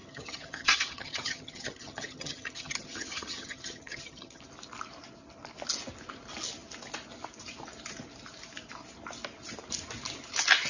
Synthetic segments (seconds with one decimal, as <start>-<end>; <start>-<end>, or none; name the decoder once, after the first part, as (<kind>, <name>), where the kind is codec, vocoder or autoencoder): 0.0-4.4 (vocoder, HiFi-GAN)